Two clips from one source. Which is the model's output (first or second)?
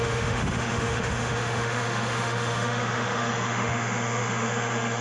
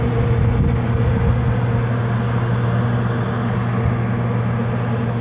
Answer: first